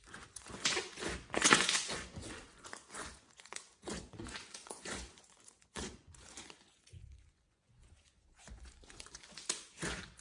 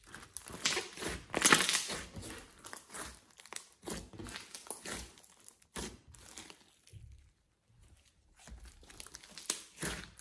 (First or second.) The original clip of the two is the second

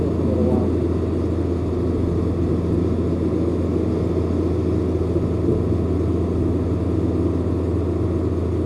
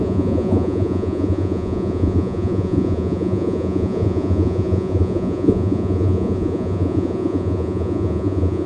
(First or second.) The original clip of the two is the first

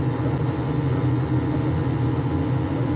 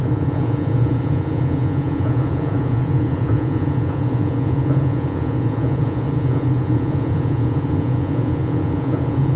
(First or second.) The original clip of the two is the first